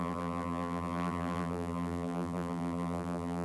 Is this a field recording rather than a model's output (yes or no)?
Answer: no